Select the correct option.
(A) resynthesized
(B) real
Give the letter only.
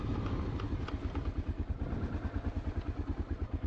B